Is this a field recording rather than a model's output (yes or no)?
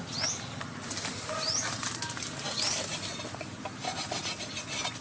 yes